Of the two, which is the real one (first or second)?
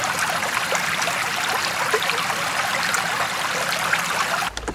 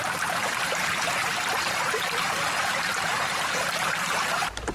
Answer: first